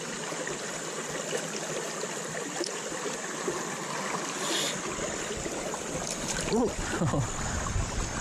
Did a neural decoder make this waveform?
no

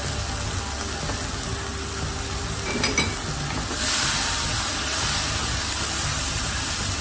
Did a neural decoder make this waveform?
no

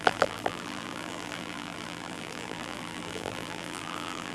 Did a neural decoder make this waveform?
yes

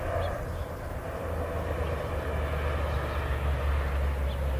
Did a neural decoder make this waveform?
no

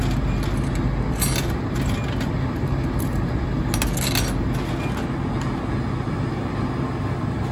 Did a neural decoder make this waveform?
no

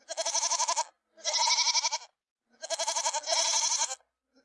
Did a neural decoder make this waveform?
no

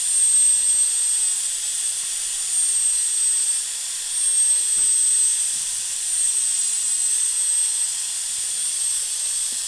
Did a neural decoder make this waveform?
no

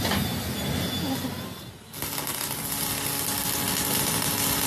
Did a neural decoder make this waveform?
no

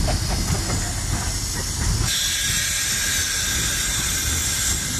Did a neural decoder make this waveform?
no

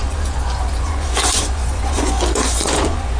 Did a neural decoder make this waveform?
yes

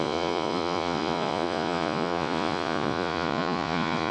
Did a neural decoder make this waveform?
yes